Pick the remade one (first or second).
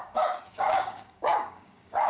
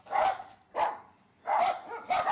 first